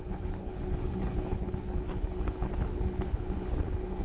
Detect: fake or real fake